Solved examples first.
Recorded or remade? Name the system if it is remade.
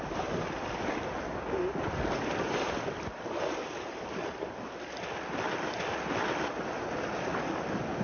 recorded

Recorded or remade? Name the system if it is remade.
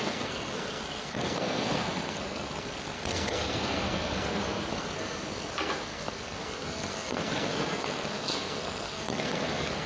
remade, codec, SNAC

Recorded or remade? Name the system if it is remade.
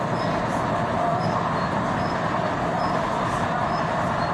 recorded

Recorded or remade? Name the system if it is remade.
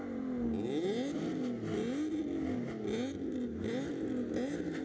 recorded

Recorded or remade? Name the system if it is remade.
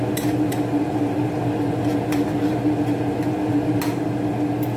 recorded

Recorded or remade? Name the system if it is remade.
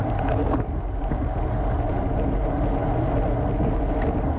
recorded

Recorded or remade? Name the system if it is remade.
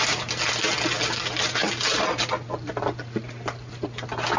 recorded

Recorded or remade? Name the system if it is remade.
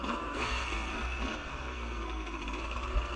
remade, codec, SNAC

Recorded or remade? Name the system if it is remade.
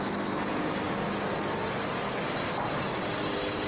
recorded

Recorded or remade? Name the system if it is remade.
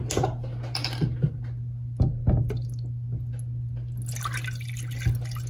recorded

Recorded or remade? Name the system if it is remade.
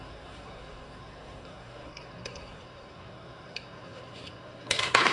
remade, codec, SNAC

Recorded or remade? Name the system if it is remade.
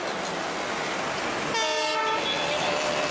recorded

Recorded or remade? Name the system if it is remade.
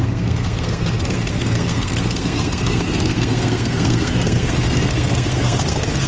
remade, codec, SNAC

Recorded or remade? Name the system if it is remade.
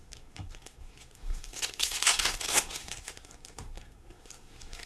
remade, codec, SNAC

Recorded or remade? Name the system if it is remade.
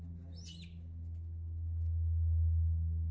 recorded